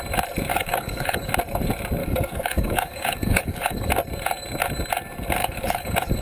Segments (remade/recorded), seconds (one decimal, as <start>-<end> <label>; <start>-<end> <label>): 0.0-0.5 recorded; 0.5-1.3 remade; 1.3-2.0 recorded; 2.0-3.9 remade; 3.9-5.4 recorded; 5.4-6.2 remade